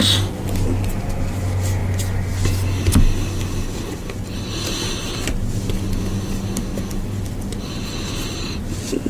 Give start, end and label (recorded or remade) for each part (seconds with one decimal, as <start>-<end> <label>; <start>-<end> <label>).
0.0-9.1 recorded